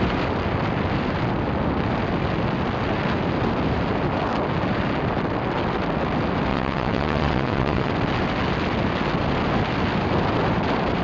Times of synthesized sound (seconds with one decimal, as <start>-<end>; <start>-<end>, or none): 6.5-7.9